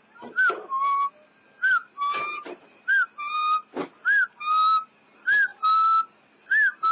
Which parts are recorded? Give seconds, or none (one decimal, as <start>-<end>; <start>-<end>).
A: 0.0-6.9